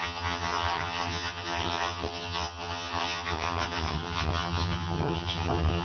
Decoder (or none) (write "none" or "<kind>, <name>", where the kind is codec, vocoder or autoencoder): vocoder, HiFi-GAN